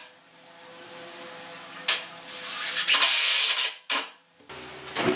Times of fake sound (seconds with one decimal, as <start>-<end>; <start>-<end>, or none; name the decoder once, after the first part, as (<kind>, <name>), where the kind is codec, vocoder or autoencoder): none